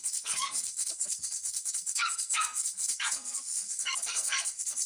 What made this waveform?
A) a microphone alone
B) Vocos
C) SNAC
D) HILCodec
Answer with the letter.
C